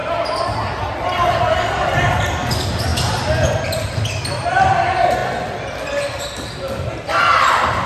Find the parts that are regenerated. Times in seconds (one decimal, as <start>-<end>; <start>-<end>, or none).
0.9-2.9; 3.6-7.9